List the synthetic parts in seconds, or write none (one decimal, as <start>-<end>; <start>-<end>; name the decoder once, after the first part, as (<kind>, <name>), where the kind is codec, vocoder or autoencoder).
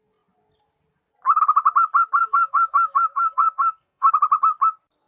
2.2-4.1 (codec, SNAC)